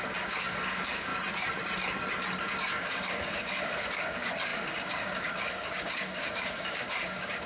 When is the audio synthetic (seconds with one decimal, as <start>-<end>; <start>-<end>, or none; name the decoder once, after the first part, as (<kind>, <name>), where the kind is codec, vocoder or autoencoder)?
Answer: 0.0-1.1 (codec, DAC); 2.4-7.5